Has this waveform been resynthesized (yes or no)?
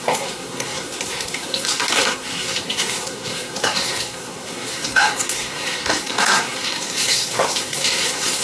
yes